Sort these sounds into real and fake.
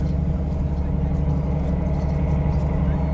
real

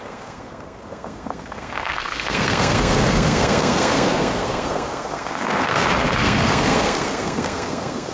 fake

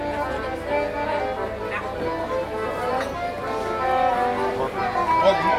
real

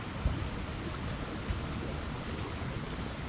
real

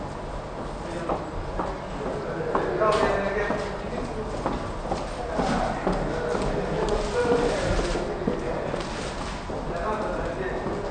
real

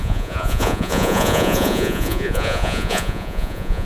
fake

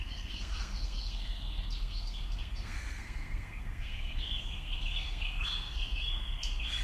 fake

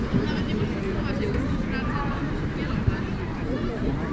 real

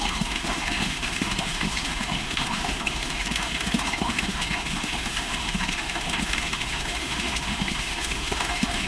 fake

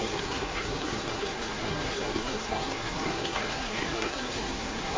fake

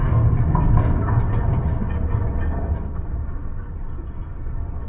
real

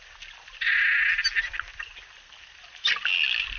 real